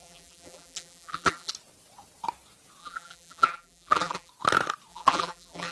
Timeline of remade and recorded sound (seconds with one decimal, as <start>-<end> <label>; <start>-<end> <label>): 0.0-1.5 remade; 1.5-2.8 recorded; 2.8-4.3 remade; 4.3-4.9 recorded; 4.9-5.7 remade